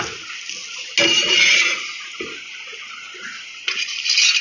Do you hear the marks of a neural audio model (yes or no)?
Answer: no